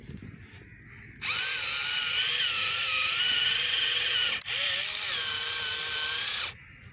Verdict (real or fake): real